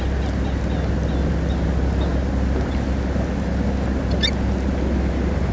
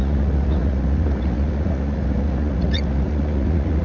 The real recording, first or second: first